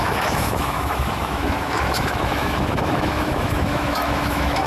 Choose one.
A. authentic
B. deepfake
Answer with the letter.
B